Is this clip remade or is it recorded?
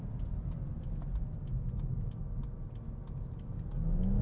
recorded